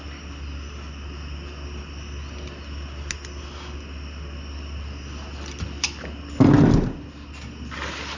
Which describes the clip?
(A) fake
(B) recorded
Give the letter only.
B